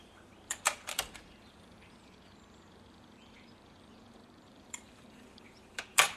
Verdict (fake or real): fake